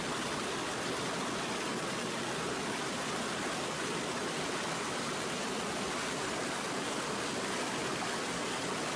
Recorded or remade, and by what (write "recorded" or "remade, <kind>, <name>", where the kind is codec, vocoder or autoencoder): recorded